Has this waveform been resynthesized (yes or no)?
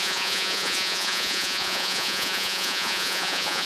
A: yes